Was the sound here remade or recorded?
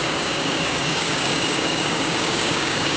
remade